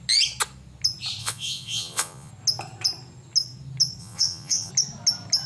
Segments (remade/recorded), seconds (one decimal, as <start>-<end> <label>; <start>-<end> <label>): 0.0-1.2 recorded; 1.2-2.3 remade; 2.3-4.0 recorded; 4.0-4.7 remade; 4.7-5.5 recorded